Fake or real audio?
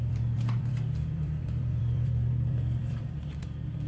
fake